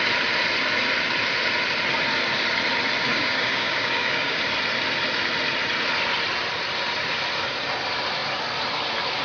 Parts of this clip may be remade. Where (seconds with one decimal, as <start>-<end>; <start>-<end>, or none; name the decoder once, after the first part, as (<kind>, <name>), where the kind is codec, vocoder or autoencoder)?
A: 3.1-4.4 (codec, DAC)